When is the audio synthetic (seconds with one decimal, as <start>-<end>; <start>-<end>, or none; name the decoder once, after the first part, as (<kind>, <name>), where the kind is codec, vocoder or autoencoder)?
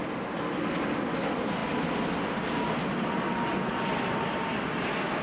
none